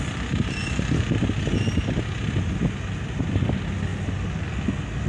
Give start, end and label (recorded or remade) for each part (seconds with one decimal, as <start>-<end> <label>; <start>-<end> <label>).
0.0-5.1 recorded